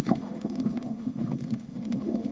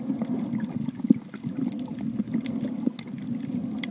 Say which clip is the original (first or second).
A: second